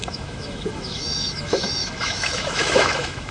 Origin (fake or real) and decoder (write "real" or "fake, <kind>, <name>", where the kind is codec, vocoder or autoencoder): fake, autoencoder, DAC-VAE